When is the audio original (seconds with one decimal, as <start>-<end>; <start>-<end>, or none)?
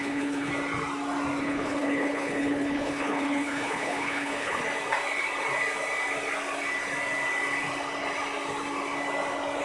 0.5-1.4; 4.6-9.6